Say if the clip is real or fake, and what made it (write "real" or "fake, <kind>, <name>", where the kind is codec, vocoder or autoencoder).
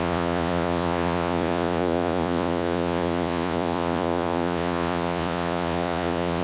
fake, vocoder, Vocos